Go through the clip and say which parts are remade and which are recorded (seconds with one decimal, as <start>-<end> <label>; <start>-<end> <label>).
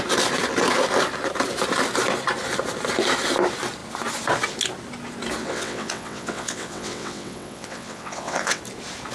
0.0-5.4 recorded; 5.4-8.6 remade; 8.6-9.1 recorded